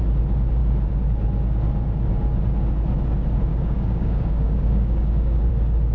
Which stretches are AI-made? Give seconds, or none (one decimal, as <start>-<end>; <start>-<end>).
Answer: 3.5-5.5